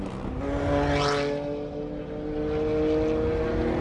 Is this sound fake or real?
real